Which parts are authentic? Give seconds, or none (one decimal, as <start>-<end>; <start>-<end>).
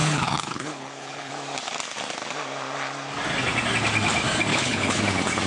1.3-4.5; 5.0-5.5